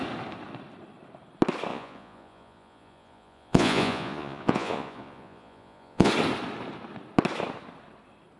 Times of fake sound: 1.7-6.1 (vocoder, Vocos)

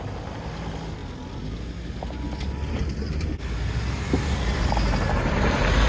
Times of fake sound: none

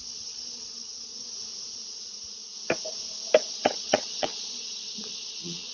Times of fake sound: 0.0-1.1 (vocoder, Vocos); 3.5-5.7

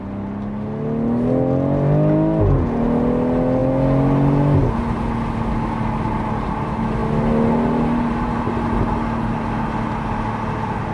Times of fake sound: none

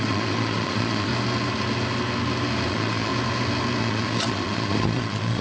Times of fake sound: 0.0-1.1 (vocoder, Vocos); 2.7-3.1; 3.8-5.4

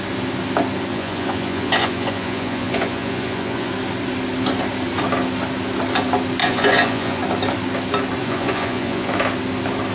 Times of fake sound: 0.9-3.7 (vocoder, Vocos); 6.4-7.2; 8.2-9.1